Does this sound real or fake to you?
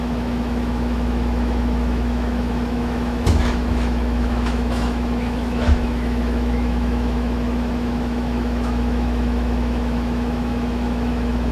fake